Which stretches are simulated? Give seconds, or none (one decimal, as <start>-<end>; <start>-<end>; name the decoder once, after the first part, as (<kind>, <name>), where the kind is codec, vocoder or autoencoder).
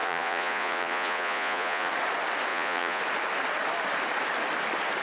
0.0-1.9 (vocoder, Vocos); 2.5-3.0